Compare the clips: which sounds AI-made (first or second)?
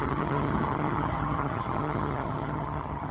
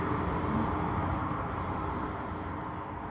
first